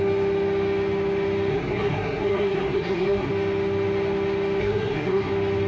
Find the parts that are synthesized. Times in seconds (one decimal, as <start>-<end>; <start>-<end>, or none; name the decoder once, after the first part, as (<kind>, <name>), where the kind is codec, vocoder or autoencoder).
1.5-3.3 (codec, SNAC); 4.6-5.3